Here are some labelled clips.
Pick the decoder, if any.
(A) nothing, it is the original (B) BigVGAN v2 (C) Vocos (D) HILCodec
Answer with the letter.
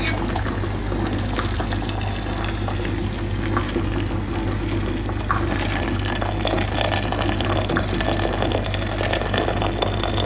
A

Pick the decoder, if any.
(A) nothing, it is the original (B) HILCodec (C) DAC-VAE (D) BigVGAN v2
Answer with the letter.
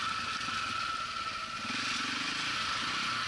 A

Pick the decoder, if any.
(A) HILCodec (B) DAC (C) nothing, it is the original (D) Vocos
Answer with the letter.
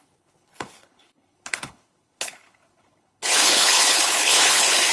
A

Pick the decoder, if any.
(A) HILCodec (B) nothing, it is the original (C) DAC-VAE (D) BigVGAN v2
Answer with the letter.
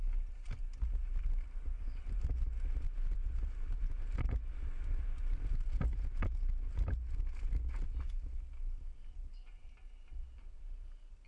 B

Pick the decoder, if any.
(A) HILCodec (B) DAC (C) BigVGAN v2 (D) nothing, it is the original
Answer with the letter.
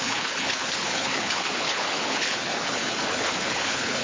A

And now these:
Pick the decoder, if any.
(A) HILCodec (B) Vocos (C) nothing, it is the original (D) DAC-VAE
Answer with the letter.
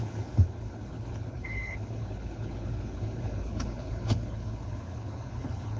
A